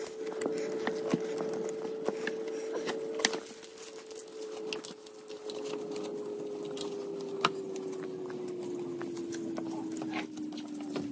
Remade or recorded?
recorded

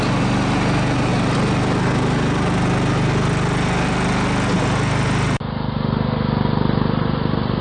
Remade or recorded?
recorded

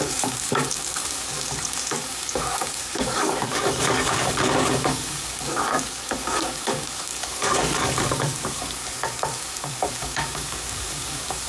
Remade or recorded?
remade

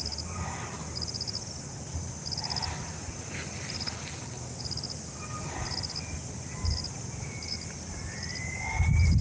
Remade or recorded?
recorded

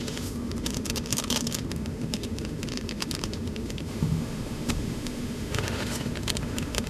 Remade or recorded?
remade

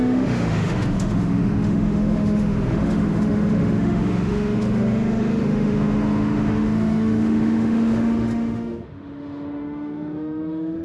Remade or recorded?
remade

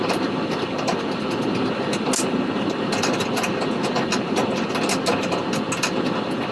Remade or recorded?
recorded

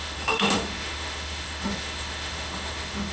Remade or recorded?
remade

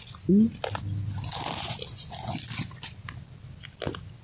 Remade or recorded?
recorded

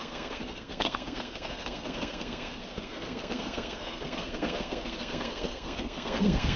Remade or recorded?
remade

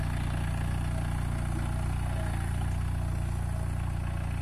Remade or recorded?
recorded